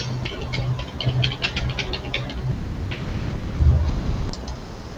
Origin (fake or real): real